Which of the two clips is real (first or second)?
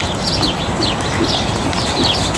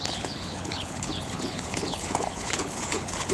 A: first